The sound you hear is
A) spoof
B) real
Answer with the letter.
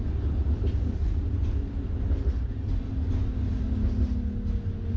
B